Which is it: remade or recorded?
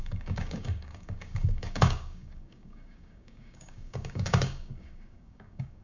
remade